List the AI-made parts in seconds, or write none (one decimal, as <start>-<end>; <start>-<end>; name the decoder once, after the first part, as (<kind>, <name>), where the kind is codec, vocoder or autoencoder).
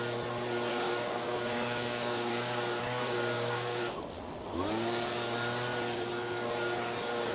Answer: 0.7-4.0 (codec, DAC)